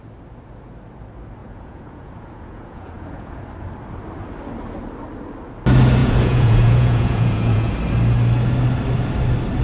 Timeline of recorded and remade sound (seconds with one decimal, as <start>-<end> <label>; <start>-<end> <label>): 0.0-1.4 recorded; 1.4-3.4 remade; 3.4-6.0 recorded; 6.0-7.7 remade; 7.7-9.6 recorded